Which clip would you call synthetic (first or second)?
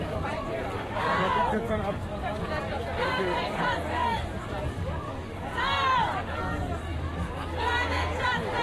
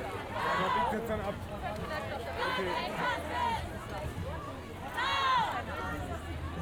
first